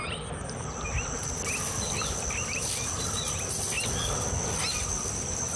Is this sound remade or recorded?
recorded